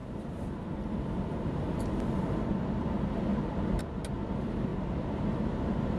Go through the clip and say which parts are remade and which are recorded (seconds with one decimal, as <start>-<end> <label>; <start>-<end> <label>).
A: 0.0-2.4 remade; 2.4-3.3 recorded; 3.3-3.8 remade; 3.8-4.7 recorded; 4.7-5.4 remade; 5.4-6.0 recorded